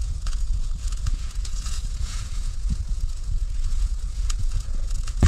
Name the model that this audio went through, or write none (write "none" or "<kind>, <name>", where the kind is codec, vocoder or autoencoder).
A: vocoder, Vocos